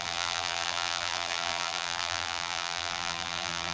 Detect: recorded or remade remade